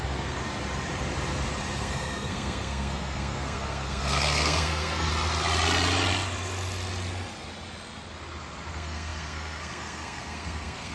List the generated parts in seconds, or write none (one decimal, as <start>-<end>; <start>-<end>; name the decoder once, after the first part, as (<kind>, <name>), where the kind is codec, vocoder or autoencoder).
0.0-0.4 (codec, SNAC); 1.8-5.1; 8.7-10.9